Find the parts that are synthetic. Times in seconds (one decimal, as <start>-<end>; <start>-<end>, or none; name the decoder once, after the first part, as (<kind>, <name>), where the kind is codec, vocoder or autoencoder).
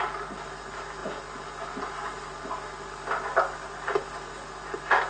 none